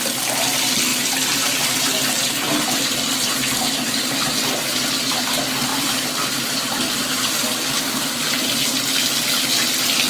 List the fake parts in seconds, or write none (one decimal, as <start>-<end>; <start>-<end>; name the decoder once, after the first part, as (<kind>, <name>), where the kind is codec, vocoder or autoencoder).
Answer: 5.7-8.3 (vocoder, BigVGAN v2)